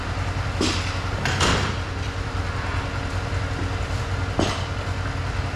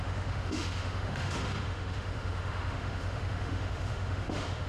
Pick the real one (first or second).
first